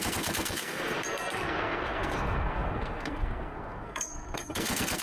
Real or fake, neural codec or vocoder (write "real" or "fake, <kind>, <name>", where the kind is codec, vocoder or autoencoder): fake, codec, SNAC